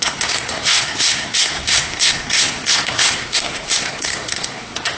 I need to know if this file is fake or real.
fake